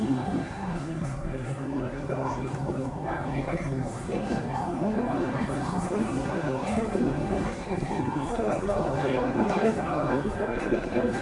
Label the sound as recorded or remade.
remade